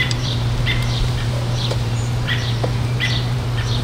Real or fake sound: fake